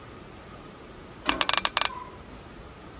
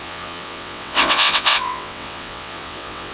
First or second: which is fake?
second